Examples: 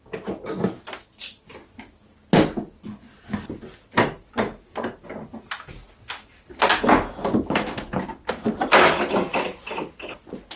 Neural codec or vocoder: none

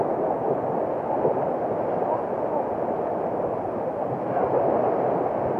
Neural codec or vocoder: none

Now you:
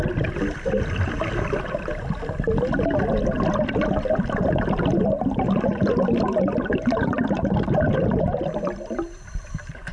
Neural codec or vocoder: vocoder, BigVGAN v2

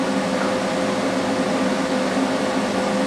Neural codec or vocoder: none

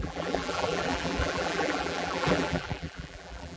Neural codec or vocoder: vocoder, BigVGAN v2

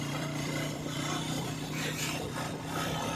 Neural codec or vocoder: vocoder, BigVGAN v2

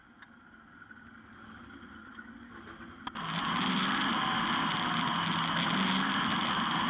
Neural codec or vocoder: none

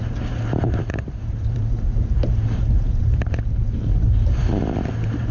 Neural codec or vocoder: vocoder, BigVGAN v2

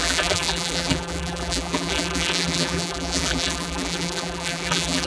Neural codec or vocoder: vocoder, BigVGAN v2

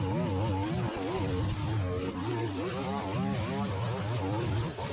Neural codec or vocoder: none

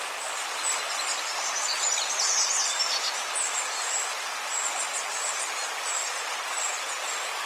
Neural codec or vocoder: none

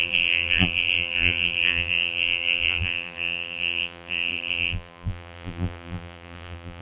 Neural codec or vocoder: vocoder, BigVGAN v2